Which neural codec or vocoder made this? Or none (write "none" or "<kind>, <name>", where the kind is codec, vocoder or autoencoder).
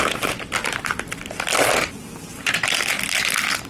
none